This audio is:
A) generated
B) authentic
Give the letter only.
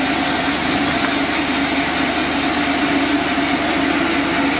B